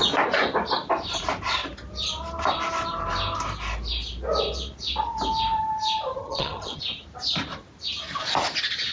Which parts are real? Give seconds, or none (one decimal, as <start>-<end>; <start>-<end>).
0.0-6.2; 6.8-8.9